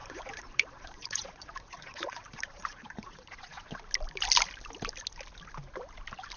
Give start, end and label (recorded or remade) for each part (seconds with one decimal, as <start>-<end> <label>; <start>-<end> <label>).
0.0-3.7 remade; 3.7-6.4 recorded